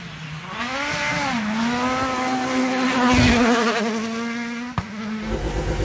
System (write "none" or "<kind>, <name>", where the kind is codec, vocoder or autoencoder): none